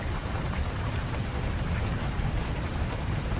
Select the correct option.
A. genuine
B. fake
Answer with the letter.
B